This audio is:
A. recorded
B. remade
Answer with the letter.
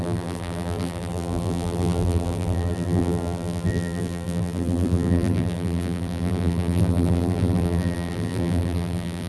B